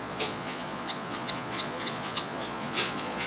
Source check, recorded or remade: remade